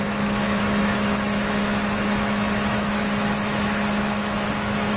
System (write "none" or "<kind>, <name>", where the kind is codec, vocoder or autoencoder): autoencoder, DAC-VAE